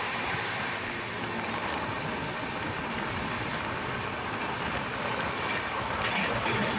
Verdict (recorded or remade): recorded